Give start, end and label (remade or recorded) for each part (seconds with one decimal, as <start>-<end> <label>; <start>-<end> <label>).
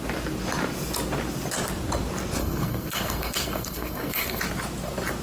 0.0-2.4 recorded; 2.4-4.4 remade; 4.4-5.2 recorded